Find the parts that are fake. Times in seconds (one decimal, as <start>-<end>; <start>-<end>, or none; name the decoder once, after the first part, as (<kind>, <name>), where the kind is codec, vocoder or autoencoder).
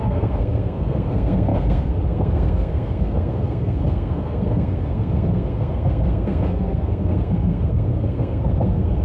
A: 0.0-9.0 (codec, SNAC)